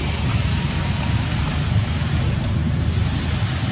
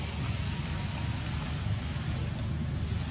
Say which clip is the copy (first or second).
first